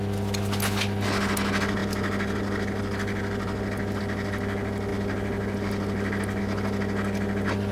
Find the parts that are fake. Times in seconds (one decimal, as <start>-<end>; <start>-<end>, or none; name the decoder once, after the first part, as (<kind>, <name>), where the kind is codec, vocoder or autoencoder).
none